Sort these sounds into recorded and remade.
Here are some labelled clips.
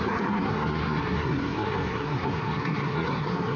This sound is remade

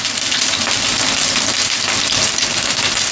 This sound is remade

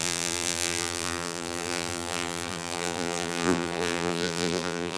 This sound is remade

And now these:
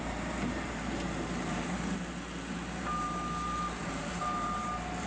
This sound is remade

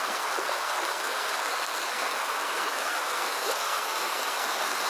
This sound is remade